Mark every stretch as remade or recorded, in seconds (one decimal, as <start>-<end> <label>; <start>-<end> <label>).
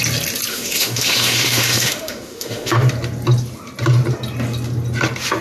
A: 0.0-0.5 recorded; 0.5-2.8 remade; 2.8-5.4 recorded